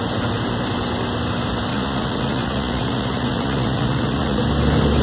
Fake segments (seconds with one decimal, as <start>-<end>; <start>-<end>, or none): 1.7-4.4